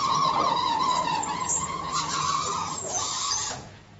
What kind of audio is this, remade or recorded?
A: remade